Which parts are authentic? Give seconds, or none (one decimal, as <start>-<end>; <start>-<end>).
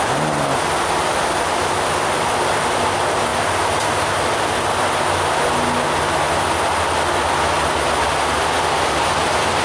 0.0-9.6